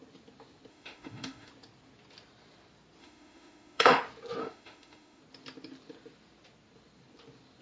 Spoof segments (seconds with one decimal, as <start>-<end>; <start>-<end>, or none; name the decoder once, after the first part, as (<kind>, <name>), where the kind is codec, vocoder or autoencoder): 0.7-1.5 (autoencoder, DAC-VAE); 3.0-4.0; 4.4-5.2